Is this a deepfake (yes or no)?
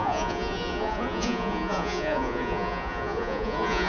yes